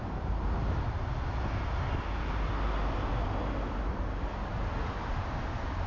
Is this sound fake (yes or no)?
no